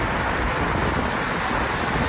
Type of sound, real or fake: real